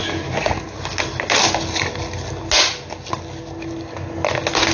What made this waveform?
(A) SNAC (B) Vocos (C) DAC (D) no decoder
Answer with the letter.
D